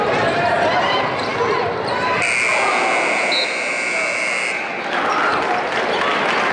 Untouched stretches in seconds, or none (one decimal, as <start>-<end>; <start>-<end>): 0.0-6.5